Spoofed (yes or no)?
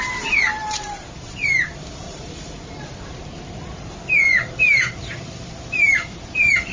yes